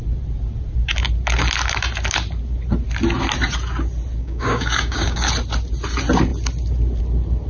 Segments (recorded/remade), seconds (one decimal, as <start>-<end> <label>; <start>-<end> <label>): 0.0-4.2 recorded; 4.2-5.3 remade; 5.3-7.5 recorded

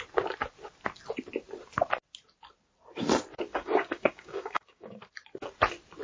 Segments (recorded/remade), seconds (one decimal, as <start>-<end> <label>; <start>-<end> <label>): 0.0-3.5 recorded; 3.5-5.0 remade; 5.0-6.0 recorded